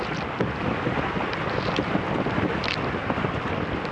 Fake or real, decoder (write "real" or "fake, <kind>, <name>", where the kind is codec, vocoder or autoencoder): real